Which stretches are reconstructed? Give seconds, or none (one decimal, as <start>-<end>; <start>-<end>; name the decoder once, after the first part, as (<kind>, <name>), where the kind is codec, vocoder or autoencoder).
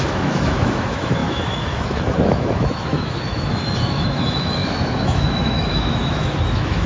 0.0-6.9 (autoencoder, DAC-VAE)